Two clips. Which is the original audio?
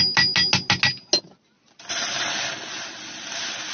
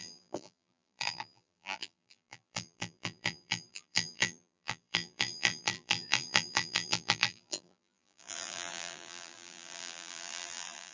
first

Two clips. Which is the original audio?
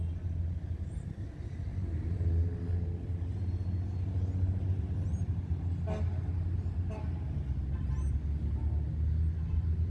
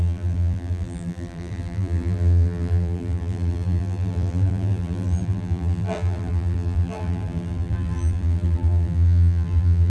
first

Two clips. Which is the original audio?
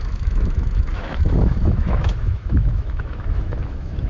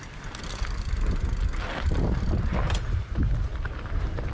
second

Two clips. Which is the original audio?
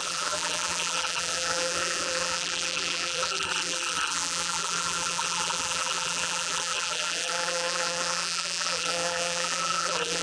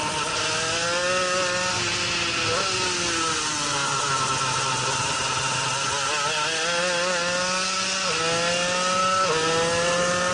second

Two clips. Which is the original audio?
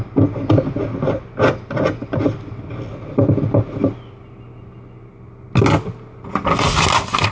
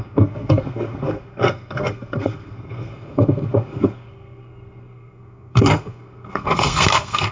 first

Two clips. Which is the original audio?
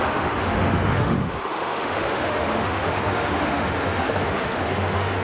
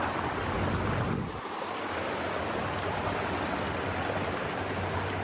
second